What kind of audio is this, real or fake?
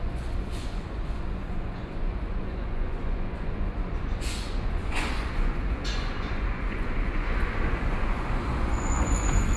fake